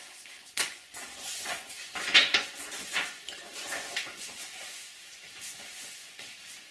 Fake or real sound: fake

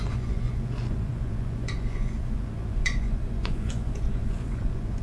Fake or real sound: fake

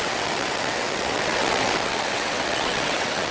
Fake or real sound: fake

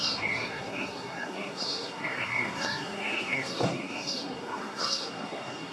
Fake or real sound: fake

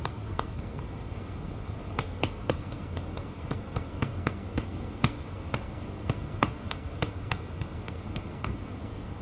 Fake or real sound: fake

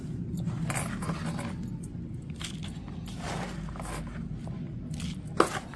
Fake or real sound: real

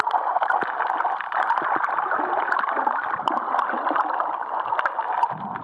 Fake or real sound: fake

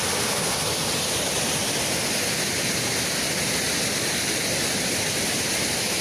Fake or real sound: real